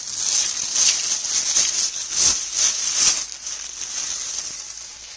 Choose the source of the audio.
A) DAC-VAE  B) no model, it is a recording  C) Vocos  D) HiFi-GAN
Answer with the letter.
B